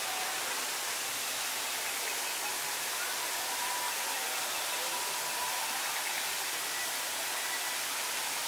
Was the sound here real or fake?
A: real